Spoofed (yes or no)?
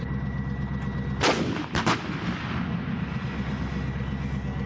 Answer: no